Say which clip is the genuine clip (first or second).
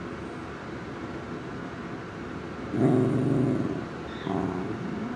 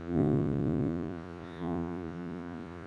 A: first